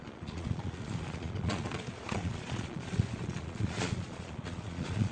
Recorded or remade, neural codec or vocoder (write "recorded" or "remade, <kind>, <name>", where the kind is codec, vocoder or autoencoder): remade, vocoder, Vocos